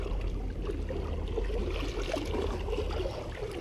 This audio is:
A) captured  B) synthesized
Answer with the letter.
A